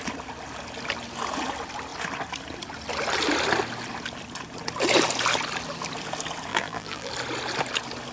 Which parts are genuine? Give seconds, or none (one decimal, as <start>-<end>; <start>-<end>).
0.0-6.5; 7.1-8.1